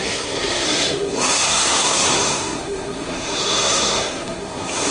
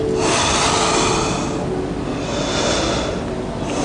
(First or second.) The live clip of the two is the second